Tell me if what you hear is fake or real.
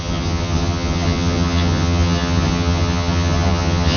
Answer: fake